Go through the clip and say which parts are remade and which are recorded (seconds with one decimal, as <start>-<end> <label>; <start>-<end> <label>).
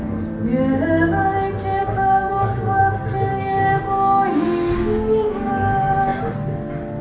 0.0-1.8 recorded; 1.8-2.8 remade; 2.8-3.3 recorded; 3.3-5.5 remade; 5.5-7.0 recorded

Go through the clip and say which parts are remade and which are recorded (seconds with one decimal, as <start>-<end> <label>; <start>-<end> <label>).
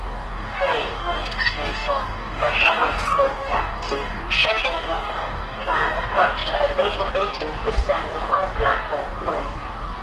0.0-10.0 remade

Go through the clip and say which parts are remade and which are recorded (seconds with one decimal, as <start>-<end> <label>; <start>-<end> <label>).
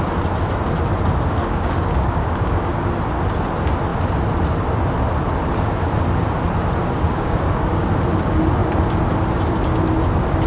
0.0-1.4 recorded; 1.4-2.9 remade; 2.9-6.8 recorded; 6.8-7.9 remade; 7.9-10.5 recorded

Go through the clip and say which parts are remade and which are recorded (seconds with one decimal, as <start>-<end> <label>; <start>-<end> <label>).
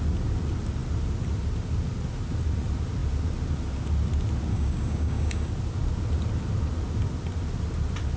0.0-4.5 recorded; 4.5-5.5 remade; 5.5-8.2 recorded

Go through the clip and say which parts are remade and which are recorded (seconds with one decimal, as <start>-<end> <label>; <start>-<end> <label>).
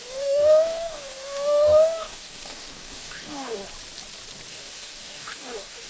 0.0-3.6 remade; 3.6-4.5 recorded; 4.5-5.9 remade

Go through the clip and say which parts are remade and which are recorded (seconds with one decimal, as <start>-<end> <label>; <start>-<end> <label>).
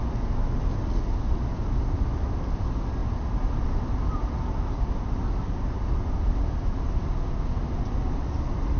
0.0-8.8 recorded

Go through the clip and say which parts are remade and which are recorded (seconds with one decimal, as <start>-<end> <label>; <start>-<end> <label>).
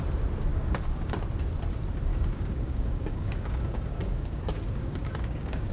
0.0-0.5 recorded; 0.5-1.1 remade; 1.1-2.1 recorded; 2.1-5.7 remade